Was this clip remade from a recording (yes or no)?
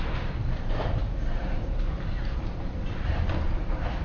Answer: yes